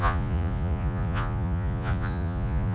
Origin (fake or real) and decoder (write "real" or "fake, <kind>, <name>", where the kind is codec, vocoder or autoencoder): fake, vocoder, Vocos